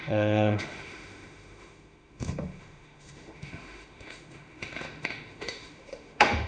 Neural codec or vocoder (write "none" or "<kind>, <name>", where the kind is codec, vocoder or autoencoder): autoencoder, DAC-VAE